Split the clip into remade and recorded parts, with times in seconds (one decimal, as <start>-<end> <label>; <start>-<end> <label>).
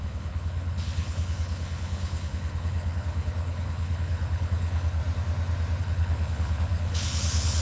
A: 0.0-5.0 remade; 5.0-5.8 recorded; 5.8-7.6 remade